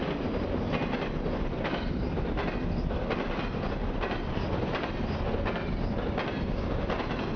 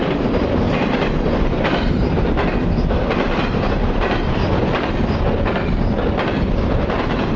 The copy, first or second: second